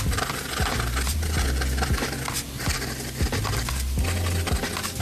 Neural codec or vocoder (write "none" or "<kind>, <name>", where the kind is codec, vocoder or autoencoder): none